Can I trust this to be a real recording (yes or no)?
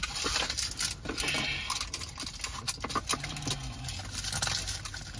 yes